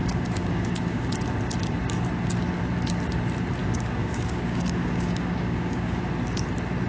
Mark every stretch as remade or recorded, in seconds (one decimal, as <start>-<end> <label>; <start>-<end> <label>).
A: 0.0-1.1 remade; 1.1-3.6 recorded; 3.6-6.0 remade; 6.0-6.9 recorded